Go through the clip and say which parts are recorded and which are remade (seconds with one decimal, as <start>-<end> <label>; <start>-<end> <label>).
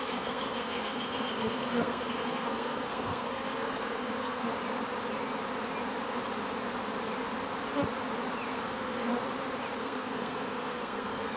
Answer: 0.0-4.5 remade; 4.5-8.5 recorded; 8.5-9.1 remade; 9.1-9.8 recorded; 9.8-11.4 remade